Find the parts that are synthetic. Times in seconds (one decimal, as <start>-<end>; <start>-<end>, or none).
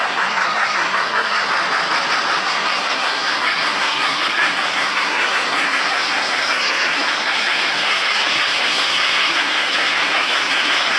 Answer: 0.0-1.5; 2.4-11.0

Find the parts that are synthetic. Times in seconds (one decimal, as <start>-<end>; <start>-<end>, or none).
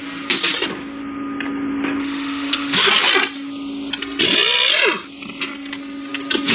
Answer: 2.0-2.9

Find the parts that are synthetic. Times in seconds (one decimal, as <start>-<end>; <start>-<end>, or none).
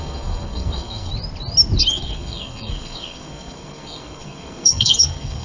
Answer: 0.0-1.1; 1.9-5.4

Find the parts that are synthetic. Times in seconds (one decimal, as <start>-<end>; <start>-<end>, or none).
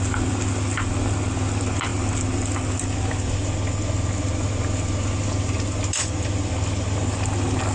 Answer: none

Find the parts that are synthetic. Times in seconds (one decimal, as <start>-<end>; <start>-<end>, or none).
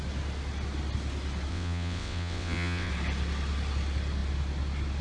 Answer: 1.5-2.9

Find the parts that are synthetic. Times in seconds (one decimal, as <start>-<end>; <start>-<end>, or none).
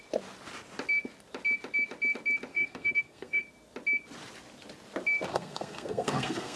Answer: 2.5-3.4; 5.3-6.6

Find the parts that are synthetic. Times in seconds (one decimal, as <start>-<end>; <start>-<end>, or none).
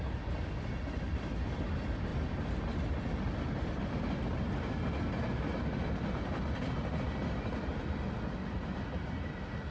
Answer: none